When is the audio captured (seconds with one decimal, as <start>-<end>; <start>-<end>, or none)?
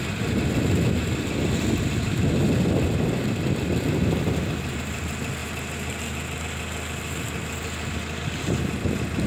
0.0-9.3